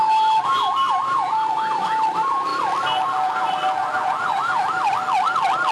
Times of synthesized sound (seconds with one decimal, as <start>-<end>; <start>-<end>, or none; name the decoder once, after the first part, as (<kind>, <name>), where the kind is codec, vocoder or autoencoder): 3.8-4.4 (vocoder, Vocos)